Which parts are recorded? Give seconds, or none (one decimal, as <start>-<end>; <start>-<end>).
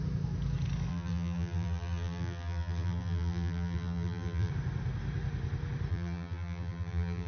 0.0-0.9; 4.5-5.9